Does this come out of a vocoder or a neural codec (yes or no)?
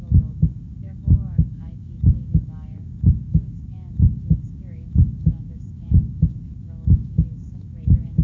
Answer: yes